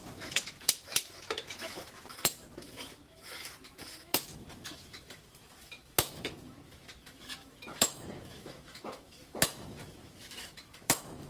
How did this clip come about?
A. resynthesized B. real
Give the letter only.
A